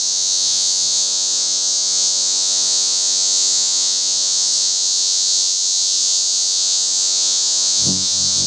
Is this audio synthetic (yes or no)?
yes